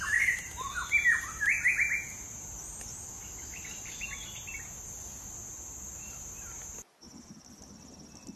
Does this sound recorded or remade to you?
recorded